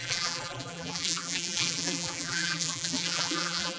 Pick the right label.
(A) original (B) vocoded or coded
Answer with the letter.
B